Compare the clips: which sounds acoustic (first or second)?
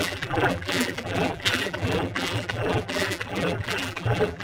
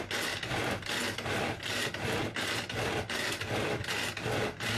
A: second